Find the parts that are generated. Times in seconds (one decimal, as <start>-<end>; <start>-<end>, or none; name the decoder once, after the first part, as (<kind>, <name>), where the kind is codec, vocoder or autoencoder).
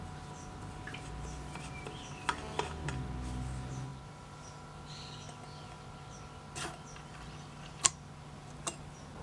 none